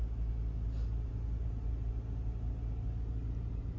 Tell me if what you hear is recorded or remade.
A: recorded